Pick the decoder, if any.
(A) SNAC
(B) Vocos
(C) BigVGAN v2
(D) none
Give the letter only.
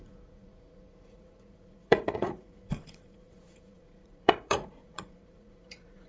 B